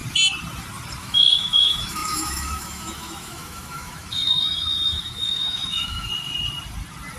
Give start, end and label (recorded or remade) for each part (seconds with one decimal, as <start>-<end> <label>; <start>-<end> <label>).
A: 0.0-1.0 recorded; 1.0-6.1 remade; 6.1-7.2 recorded